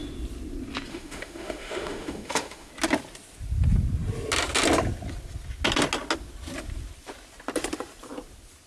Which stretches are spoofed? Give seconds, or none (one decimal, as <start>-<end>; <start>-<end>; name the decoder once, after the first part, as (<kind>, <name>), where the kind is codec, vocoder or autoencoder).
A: 0.9-2.7 (autoencoder, DAC-VAE)